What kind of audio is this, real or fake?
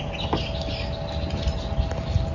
real